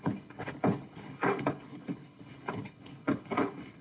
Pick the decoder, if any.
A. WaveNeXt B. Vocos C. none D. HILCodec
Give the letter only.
D